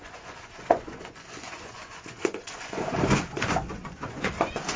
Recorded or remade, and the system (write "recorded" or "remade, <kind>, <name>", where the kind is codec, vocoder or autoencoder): remade, vocoder, Vocos